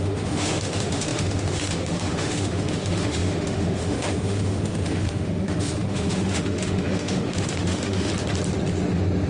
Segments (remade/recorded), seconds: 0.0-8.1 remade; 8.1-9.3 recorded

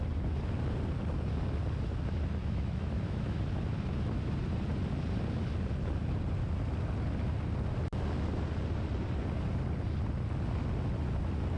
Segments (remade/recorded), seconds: 0.0-2.4 recorded; 2.4-3.4 remade; 3.4-11.6 recorded

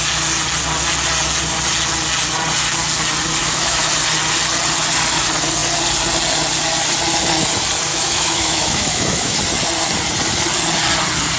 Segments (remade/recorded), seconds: 0.0-3.4 recorded; 3.4-3.9 remade; 3.9-7.9 recorded; 7.9-9.4 remade; 9.4-11.4 recorded

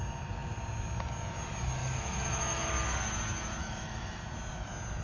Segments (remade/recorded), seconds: 0.0-1.8 recorded; 1.8-2.7 remade; 2.7-3.6 recorded; 3.6-4.2 remade; 4.2-5.0 recorded

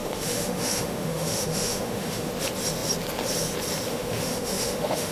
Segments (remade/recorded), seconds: 0.0-2.3 remade; 2.3-3.9 recorded; 3.9-5.1 remade

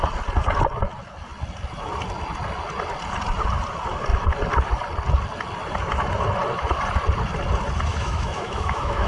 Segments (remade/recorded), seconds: 0.0-7.9 recorded; 7.9-9.1 remade